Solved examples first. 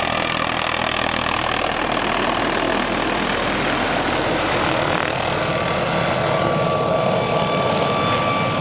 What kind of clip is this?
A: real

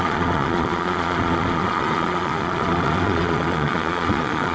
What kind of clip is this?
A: fake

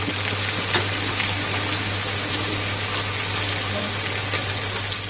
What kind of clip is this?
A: real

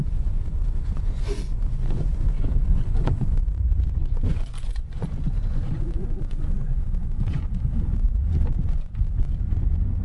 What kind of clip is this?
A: fake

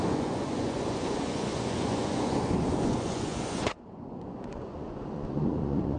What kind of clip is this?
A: fake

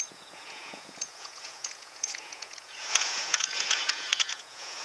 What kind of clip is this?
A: fake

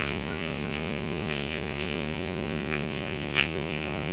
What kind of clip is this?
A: fake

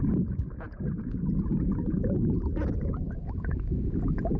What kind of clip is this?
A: fake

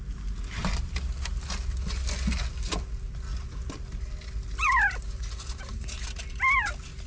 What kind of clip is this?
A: real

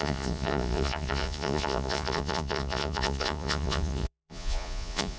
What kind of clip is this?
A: fake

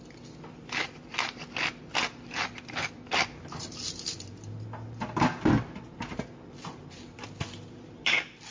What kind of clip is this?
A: real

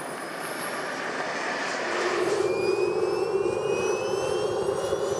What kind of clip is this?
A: real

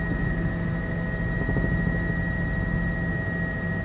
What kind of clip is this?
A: real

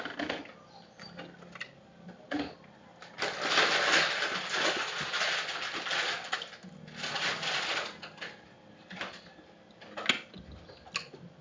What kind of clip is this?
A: real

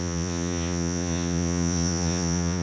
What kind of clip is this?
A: fake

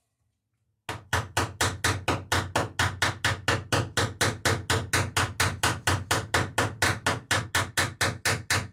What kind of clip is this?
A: real